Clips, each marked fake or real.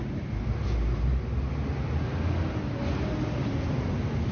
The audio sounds real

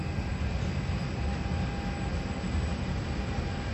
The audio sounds real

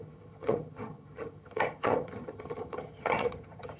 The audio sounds fake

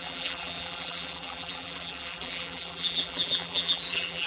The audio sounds fake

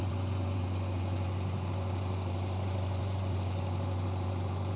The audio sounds fake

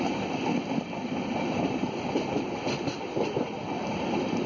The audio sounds real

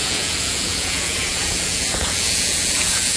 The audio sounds fake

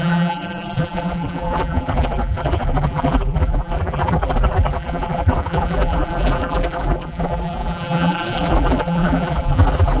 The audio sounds fake